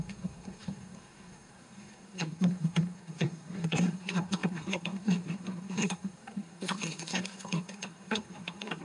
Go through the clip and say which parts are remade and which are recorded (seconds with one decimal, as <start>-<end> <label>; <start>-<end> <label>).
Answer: 0.0-8.8 remade